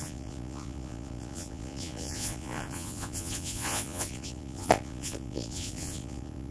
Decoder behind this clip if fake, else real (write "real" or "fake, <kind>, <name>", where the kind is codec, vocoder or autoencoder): fake, vocoder, Vocos